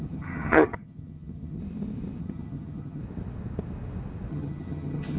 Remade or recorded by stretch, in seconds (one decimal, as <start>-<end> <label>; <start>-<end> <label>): 0.0-1.6 remade; 1.6-2.2 recorded; 2.2-3.0 remade; 3.0-4.3 recorded; 4.3-5.2 remade